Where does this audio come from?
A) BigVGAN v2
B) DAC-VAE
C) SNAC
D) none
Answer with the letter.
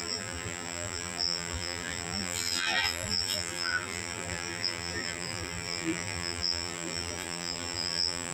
A